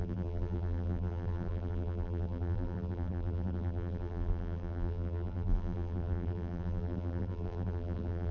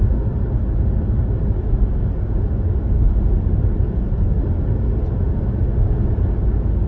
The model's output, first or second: first